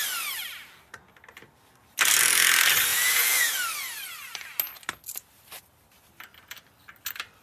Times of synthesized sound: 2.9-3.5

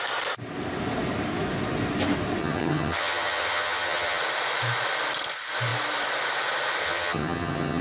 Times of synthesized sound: 2.4-4.2; 6.8-7.8

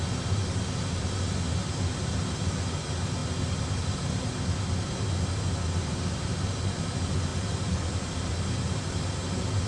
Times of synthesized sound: none